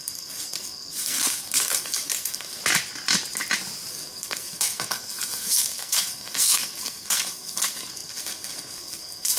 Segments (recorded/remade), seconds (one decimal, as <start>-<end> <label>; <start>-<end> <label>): 0.0-2.6 remade; 2.6-3.9 recorded; 3.9-9.4 remade